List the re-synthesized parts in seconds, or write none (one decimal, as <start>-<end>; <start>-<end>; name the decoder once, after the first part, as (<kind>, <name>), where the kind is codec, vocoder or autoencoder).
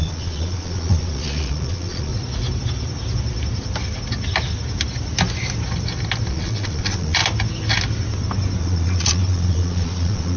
0.0-2.1 (vocoder, Vocos); 6.3-7.2; 8.6-10.4